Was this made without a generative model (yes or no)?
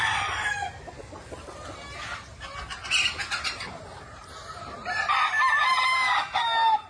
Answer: yes